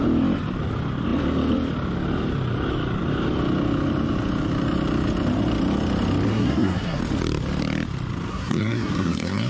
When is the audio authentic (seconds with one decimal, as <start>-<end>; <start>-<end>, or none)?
0.0-6.3; 7.0-8.3